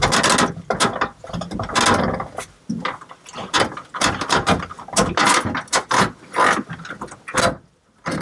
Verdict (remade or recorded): recorded